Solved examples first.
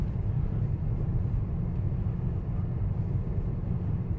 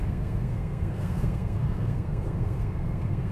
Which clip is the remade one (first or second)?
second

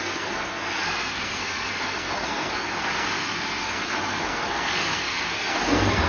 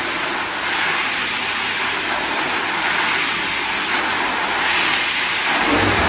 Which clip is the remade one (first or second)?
first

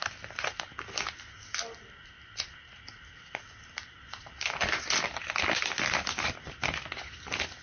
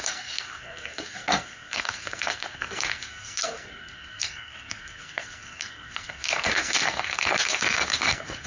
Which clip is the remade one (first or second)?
second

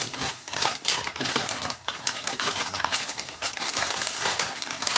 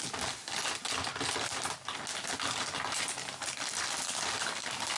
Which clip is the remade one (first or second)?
first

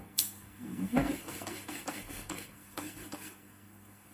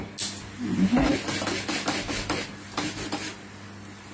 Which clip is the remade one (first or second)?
first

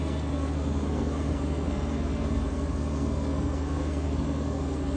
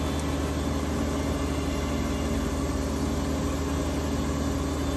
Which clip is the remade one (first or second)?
first